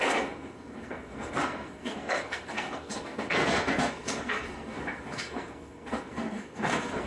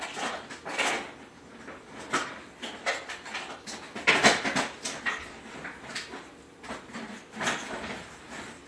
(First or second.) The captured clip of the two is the second